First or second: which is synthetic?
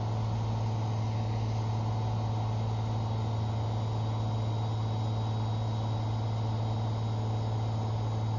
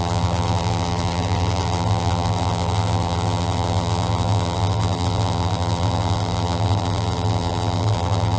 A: second